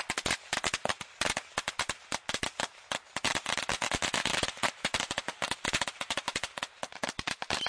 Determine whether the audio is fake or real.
fake